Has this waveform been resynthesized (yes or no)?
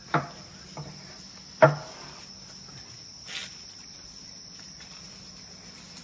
no